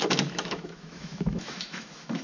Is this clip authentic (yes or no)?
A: no